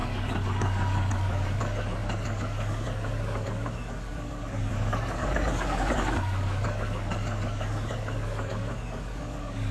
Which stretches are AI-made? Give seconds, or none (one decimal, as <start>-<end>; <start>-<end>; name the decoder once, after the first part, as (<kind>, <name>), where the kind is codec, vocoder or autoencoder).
0.0-9.7 (codec, DAC)